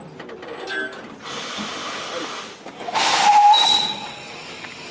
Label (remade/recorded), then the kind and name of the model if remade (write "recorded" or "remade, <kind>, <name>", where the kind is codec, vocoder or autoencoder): recorded